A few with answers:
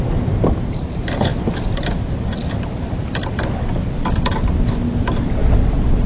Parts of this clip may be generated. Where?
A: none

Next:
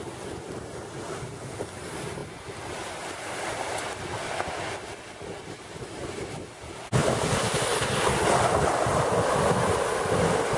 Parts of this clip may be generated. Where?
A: none

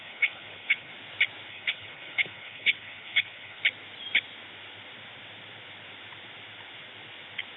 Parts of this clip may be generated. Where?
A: 0.0-0.9 (codec, HILCodec); 1.5-3.6

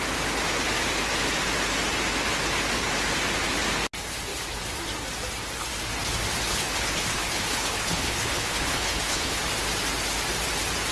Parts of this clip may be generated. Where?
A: 6.5-9.4 (codec, HILCodec)